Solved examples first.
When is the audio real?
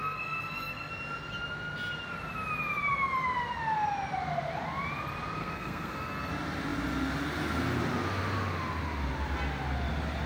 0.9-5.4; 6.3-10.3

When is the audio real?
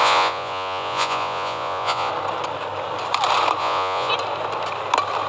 2.1-3.6; 4.1-5.3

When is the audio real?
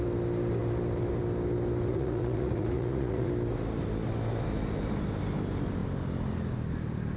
0.0-1.9; 3.3-7.2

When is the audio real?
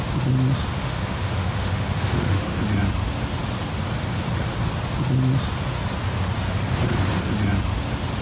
0.0-0.8; 2.6-8.2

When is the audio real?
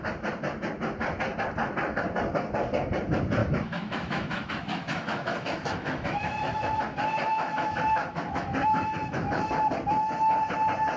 0.0-3.4; 6.8-7.3; 9.5-11.0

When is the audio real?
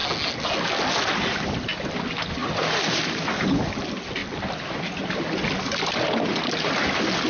0.0-7.3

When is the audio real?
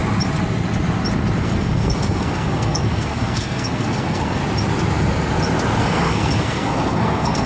0.0-1.4; 4.4-5.8